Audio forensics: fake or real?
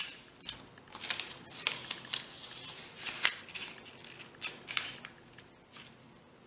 real